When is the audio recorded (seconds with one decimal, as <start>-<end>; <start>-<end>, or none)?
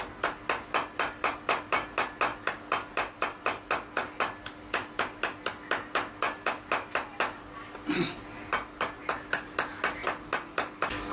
0.0-11.1